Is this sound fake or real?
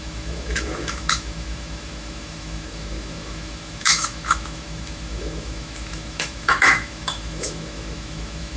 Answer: fake